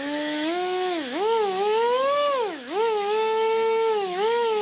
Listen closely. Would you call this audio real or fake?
fake